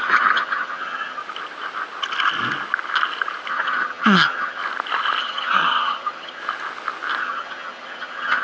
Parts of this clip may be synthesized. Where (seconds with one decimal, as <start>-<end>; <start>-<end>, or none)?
0.0-1.2; 3.5-4.6; 5.2-6.4; 7.2-8.4